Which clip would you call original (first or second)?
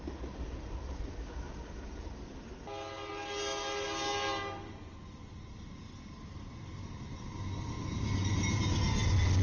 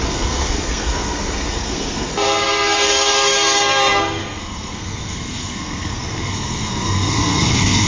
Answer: first